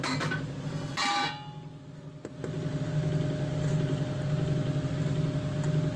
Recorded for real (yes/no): yes